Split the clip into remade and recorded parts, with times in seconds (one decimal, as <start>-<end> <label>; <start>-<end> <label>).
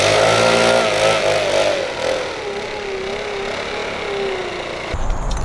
0.0-5.4 recorded